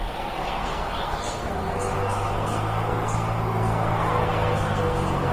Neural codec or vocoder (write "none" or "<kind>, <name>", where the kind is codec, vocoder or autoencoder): codec, SNAC